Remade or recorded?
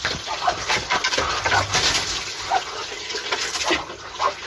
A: recorded